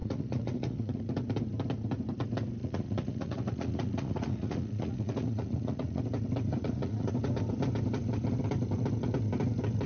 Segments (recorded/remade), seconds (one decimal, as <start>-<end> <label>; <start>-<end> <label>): 0.0-1.0 remade; 1.0-2.6 recorded; 2.6-6.0 remade; 6.0-6.5 recorded; 6.5-7.1 remade; 7.1-9.9 recorded